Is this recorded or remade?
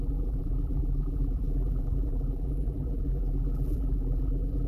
remade